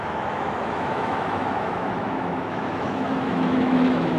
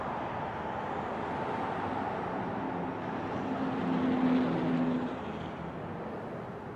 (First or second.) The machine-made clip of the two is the first